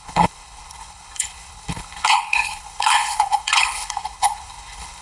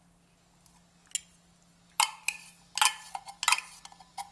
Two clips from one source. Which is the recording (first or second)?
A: second